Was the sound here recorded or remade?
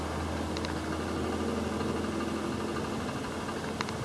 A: recorded